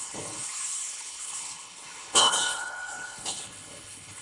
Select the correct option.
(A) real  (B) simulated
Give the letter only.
B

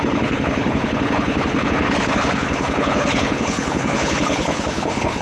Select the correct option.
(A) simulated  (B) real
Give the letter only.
A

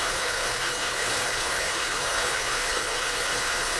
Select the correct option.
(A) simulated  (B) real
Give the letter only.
A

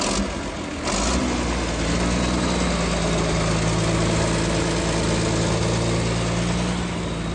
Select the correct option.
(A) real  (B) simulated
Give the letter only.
A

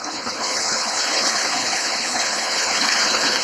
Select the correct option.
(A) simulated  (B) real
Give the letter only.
A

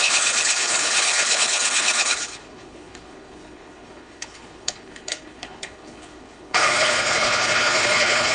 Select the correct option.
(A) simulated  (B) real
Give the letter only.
A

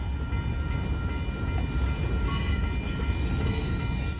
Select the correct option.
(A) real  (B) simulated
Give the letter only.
A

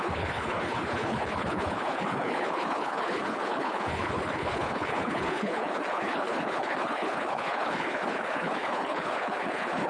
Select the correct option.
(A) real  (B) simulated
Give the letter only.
B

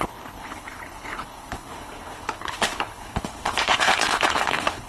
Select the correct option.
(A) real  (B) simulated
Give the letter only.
B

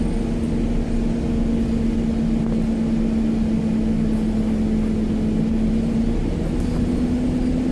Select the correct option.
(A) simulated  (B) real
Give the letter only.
B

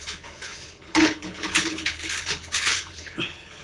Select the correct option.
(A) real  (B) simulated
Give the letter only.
B